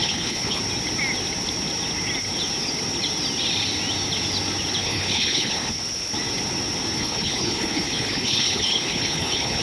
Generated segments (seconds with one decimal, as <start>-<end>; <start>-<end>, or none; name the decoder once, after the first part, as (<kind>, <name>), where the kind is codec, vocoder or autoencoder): 0.0-0.6 (codec, HILCodec); 4.8-5.8; 7.0-9.6